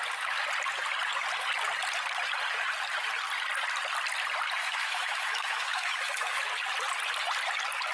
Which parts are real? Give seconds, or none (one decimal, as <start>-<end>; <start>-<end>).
0.0-4.6; 6.4-7.9